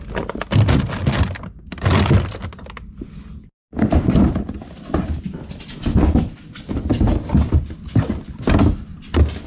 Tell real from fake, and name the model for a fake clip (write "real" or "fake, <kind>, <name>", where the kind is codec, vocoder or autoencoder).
real